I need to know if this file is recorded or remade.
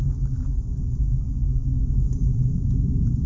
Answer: recorded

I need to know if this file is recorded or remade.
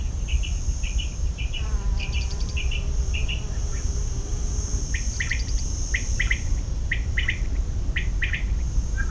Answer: remade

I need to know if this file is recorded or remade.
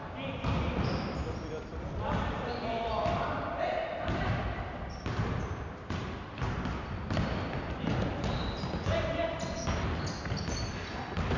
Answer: recorded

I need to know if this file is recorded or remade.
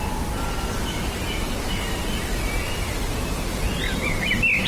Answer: recorded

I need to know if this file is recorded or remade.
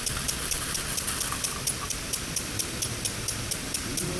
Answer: remade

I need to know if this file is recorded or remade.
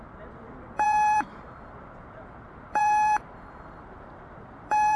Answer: remade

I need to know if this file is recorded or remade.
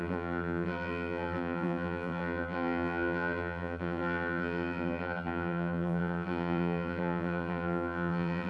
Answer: remade